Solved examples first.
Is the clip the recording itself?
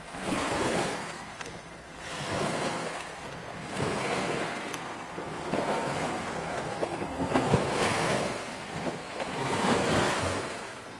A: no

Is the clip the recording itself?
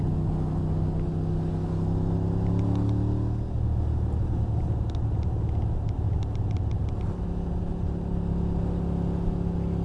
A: yes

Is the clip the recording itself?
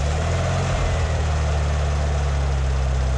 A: yes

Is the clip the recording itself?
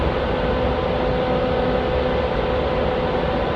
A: yes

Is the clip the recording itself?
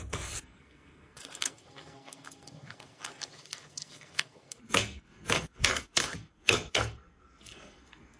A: no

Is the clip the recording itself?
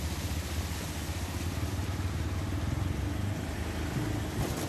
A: yes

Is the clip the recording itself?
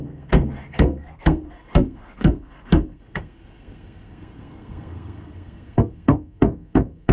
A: no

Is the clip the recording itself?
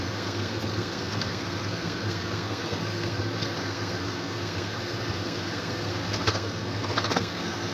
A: no